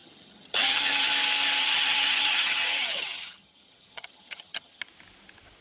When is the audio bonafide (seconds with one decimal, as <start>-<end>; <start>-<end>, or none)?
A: 1.1-1.6; 4.8-5.6